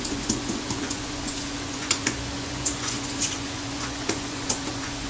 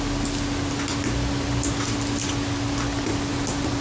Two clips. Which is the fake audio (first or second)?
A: first